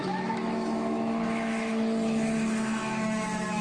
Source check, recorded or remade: remade